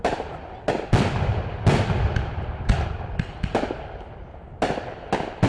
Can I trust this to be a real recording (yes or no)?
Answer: yes